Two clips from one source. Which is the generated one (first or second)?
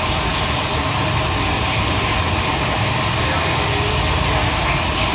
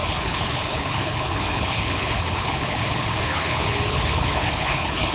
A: second